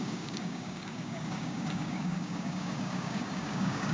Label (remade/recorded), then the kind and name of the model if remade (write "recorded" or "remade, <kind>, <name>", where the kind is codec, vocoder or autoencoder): remade, codec, DAC